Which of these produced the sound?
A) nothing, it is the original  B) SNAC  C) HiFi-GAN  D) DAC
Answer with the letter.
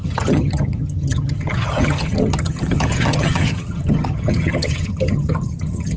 C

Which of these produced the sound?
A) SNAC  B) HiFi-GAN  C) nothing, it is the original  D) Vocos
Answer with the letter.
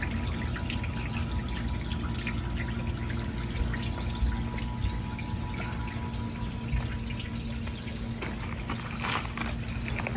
C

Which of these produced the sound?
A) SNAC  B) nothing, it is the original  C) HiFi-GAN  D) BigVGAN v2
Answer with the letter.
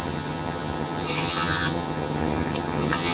C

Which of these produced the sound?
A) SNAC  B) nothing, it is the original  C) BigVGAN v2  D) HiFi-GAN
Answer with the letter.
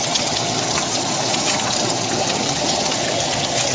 D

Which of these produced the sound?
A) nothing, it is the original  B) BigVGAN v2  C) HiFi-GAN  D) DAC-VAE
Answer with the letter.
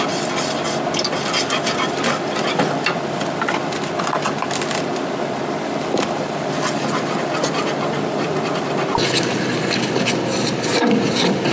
A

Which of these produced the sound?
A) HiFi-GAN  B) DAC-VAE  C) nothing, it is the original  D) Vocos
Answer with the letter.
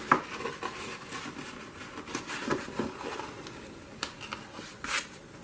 C